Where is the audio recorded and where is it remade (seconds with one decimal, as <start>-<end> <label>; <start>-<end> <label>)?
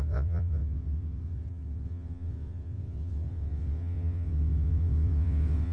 0.0-5.7 remade